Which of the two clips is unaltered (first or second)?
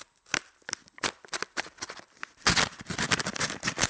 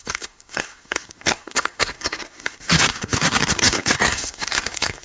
first